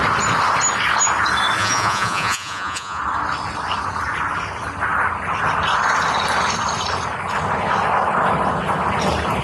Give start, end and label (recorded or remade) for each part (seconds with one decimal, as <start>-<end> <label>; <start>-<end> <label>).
0.0-1.6 recorded; 1.6-3.0 remade; 3.0-9.4 recorded